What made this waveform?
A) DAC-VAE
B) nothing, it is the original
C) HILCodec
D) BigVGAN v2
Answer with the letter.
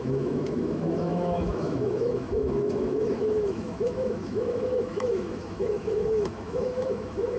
A